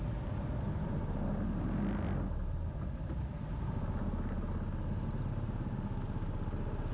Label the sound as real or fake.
real